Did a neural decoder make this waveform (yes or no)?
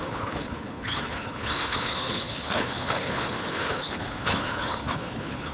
yes